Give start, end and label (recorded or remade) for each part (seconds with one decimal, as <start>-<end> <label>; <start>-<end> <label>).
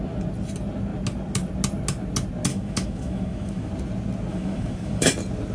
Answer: 0.0-2.5 recorded; 2.5-3.7 remade; 3.7-4.3 recorded; 4.3-5.1 remade; 5.1-5.5 recorded